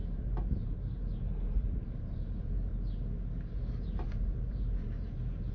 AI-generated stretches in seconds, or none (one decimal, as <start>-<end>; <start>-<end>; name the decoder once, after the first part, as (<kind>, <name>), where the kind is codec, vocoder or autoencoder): 0.0-2.7 (vocoder, BigVGAN v2); 3.5-5.5